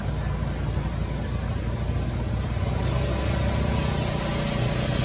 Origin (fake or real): real